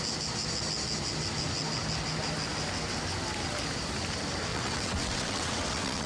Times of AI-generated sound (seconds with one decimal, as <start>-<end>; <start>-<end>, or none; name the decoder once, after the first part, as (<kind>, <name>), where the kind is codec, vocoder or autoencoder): 4.5-6.1 (vocoder, WaveNeXt)